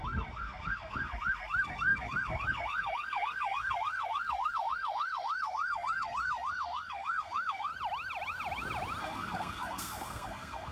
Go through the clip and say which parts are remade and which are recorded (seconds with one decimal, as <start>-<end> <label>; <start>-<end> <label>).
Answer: 0.0-7.7 remade; 7.7-9.0 recorded; 9.0-10.7 remade